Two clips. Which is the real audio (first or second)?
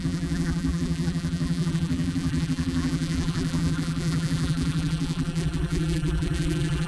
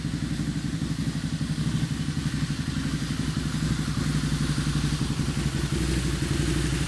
second